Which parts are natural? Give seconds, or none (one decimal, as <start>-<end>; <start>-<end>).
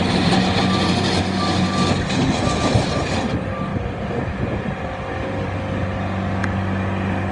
0.0-7.3